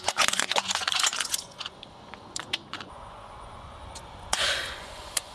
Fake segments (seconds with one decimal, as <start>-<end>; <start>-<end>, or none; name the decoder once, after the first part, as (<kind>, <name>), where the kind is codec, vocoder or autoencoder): 0.0-5.3 (vocoder, Vocos)